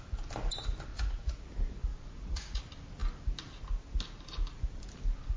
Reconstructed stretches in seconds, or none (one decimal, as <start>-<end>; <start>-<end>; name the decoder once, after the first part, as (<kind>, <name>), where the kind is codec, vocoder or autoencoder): 0.9-1.4 (vocoder, Vocos); 1.9-2.6